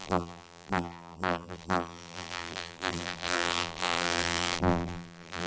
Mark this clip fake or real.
fake